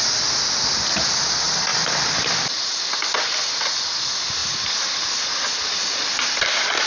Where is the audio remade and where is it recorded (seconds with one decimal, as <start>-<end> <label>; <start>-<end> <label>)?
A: 0.0-6.9 recorded